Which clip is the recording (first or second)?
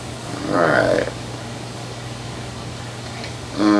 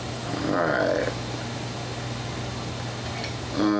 second